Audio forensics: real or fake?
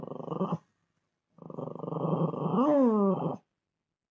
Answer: real